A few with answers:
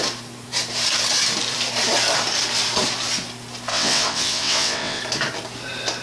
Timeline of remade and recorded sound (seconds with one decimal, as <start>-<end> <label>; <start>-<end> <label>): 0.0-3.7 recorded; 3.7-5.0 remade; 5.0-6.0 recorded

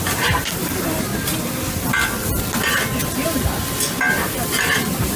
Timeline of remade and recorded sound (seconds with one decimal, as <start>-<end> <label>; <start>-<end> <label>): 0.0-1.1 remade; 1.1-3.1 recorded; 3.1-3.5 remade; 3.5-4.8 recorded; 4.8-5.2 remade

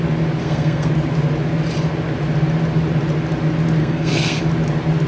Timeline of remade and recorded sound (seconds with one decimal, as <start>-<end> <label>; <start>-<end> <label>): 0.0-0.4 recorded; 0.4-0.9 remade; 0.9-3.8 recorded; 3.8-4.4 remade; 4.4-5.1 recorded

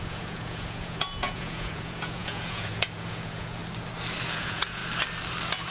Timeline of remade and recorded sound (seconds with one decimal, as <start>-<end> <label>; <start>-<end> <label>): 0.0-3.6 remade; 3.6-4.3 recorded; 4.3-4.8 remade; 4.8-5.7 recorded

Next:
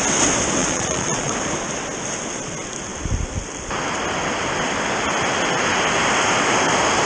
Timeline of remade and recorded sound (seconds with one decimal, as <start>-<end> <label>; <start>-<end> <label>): 0.0-0.6 recorded; 0.6-1.3 remade; 1.3-7.1 recorded

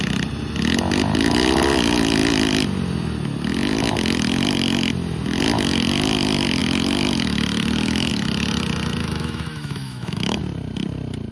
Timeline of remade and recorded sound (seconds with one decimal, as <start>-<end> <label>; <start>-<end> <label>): 0.0-9.0 recorded; 9.0-10.4 remade; 10.4-11.3 recorded

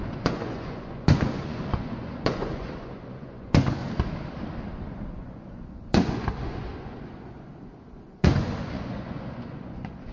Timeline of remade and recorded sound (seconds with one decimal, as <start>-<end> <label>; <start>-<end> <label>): 0.0-3.8 remade; 3.8-5.1 recorded; 5.1-10.1 remade